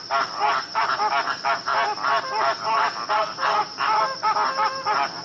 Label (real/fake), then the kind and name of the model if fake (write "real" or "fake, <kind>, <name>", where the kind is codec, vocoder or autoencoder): real